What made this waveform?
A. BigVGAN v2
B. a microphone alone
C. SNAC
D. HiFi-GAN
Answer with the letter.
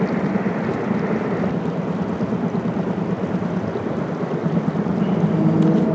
B